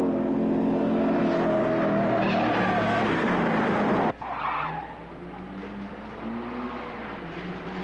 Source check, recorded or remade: recorded